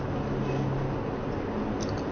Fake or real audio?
real